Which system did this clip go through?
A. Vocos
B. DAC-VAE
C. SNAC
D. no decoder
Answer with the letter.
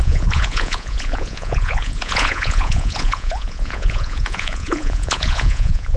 A